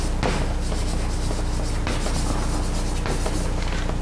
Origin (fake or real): real